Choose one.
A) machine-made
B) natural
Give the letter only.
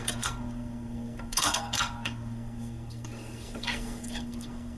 A